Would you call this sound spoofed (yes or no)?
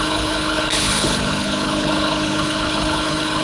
yes